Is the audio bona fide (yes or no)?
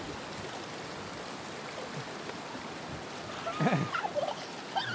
yes